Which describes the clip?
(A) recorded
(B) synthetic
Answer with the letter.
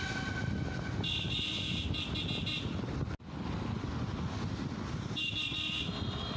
A